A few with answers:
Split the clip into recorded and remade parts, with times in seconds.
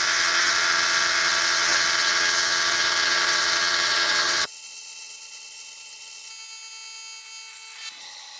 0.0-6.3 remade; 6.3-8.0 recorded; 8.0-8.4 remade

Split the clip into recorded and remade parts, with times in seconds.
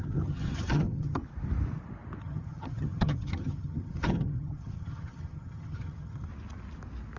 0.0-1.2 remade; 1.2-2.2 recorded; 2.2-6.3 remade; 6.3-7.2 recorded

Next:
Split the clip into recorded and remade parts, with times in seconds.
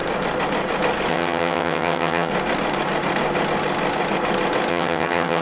0.0-1.1 recorded; 1.1-2.3 remade; 2.3-4.7 recorded; 4.7-5.4 remade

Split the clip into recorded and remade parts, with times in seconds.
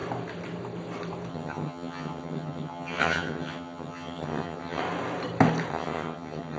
0.0-1.3 recorded; 1.3-4.8 remade; 4.8-5.7 recorded; 5.7-6.6 remade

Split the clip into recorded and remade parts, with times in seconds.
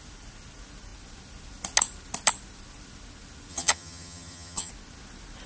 0.0-3.5 recorded; 3.5-4.7 remade; 4.7-5.5 recorded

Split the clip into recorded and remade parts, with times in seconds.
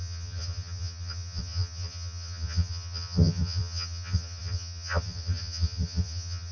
0.0-6.5 remade